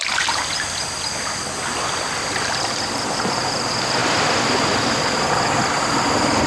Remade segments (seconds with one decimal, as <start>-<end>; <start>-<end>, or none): none